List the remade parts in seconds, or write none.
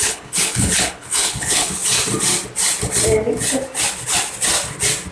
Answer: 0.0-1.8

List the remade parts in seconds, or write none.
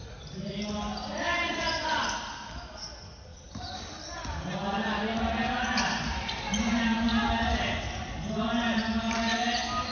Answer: none